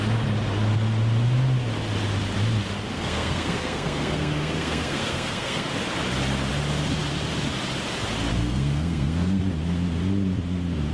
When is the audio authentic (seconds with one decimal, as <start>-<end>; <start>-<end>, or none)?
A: 0.0-2.9; 5.7-8.3; 9.4-10.9